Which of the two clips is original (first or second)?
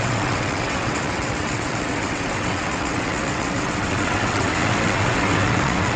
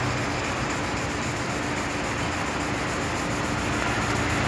second